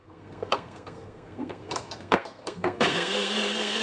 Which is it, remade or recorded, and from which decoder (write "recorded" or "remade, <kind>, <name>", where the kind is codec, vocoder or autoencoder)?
remade, codec, SNAC